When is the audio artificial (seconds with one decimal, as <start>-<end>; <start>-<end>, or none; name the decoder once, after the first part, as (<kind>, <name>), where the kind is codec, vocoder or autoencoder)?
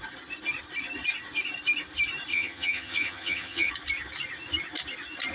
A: 2.3-3.7 (vocoder, HiFi-GAN)